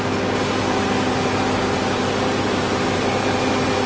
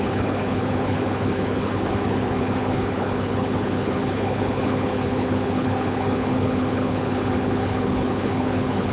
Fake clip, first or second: second